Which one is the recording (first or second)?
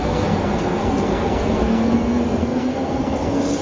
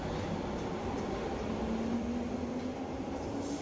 second